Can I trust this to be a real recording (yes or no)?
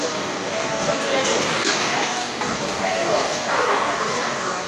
no